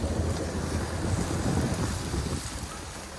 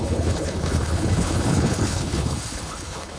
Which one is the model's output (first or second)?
second